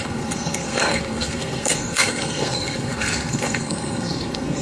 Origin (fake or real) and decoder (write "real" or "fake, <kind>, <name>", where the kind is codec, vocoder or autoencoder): fake, codec, SNAC